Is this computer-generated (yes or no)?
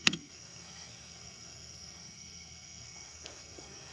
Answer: yes